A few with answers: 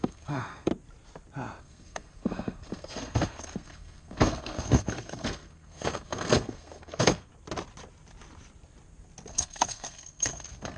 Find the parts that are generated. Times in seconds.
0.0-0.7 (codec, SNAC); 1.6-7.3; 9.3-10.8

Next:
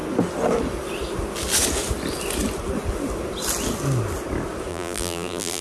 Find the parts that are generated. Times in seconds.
4.7-5.6 (vocoder, BigVGAN v2)

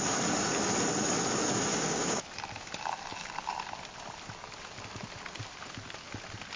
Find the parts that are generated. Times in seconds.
1.7-2.2 (codec, DAC)

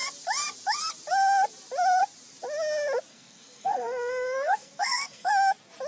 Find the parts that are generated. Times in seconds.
3.1-5.3 (codec, SNAC)

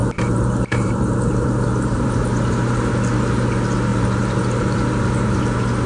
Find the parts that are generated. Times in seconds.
0.0-2.9 (vocoder, BigVGAN v2); 3.9-5.4

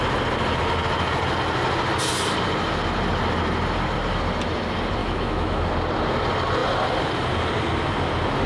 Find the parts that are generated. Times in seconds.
5.0-5.7 (autoencoder, DAC-VAE)

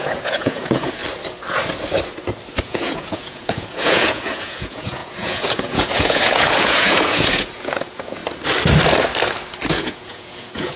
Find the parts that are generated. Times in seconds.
0.0-1.0 (vocoder, Vocos); 2.6-8.2; 9.7-10.8